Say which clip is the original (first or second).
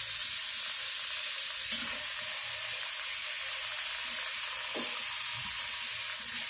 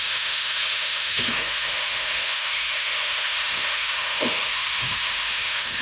first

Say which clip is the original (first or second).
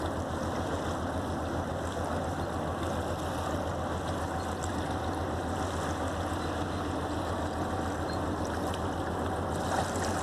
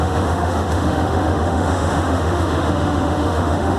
first